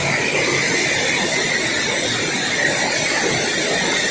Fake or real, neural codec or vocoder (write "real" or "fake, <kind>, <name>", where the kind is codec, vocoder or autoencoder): real